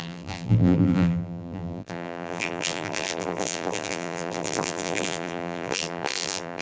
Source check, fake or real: fake